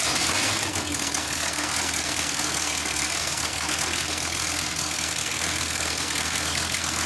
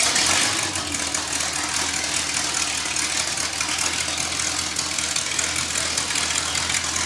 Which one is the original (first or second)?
second